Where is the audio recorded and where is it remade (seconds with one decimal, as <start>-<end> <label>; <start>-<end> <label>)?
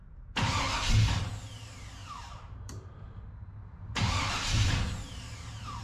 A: 0.0-2.0 recorded; 2.0-5.8 remade